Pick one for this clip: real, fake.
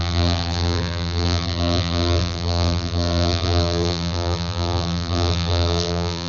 fake